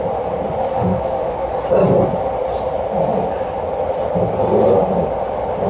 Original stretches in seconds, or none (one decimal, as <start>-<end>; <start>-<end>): 0.0-0.7; 1.5-5.7